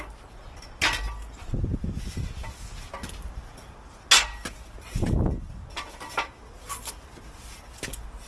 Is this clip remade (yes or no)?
no